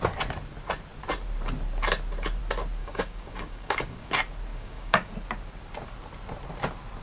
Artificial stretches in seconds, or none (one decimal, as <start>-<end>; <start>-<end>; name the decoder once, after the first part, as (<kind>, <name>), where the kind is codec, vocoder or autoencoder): 2.8-4.1 (codec, DAC); 4.5-5.1